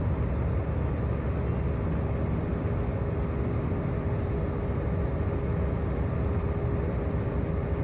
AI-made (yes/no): no